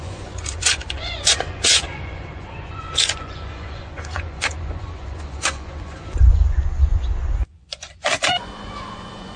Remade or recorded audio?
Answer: remade